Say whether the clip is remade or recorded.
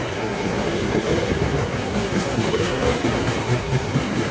remade